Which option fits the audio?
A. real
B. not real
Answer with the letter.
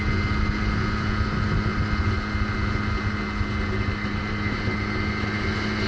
A